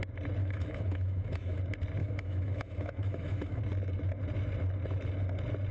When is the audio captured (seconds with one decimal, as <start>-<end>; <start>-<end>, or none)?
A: 0.0-0.4; 1.6-2.0; 3.6-5.7